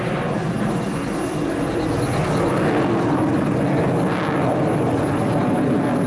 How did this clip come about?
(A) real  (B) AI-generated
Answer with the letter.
A